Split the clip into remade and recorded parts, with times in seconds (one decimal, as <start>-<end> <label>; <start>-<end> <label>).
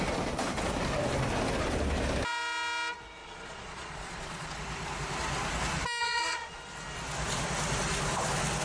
0.0-3.2 recorded; 3.2-4.5 remade; 4.5-6.0 recorded; 6.0-6.6 remade; 6.6-8.6 recorded